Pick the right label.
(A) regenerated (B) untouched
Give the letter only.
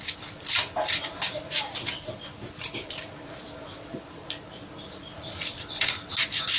A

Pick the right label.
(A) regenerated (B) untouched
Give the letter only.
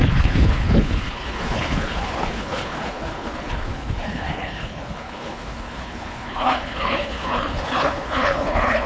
A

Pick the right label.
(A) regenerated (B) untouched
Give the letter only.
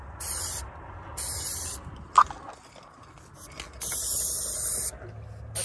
B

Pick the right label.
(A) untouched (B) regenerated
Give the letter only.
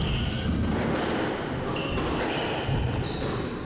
A